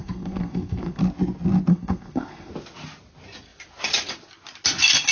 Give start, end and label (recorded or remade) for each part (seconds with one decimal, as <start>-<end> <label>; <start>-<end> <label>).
0.0-1.0 remade; 1.0-1.7 recorded; 1.7-2.5 remade; 2.5-5.1 recorded